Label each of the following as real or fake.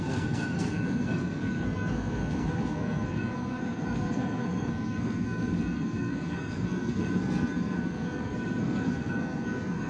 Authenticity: fake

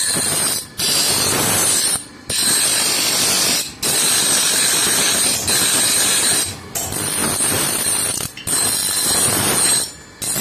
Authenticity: real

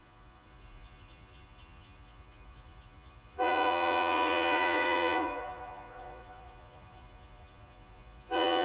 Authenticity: fake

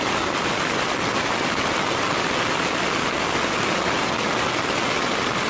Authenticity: real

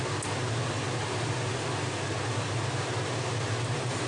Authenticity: real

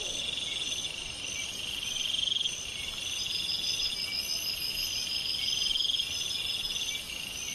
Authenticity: real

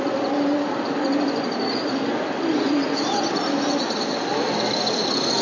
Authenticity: fake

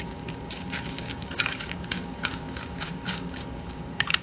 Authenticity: fake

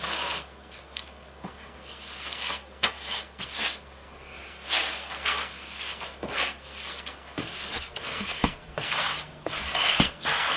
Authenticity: fake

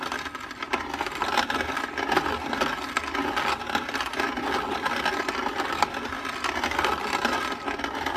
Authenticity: real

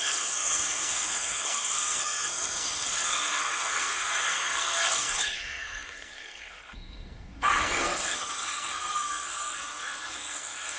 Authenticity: fake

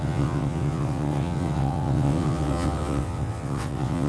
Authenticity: fake